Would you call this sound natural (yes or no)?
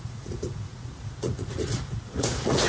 no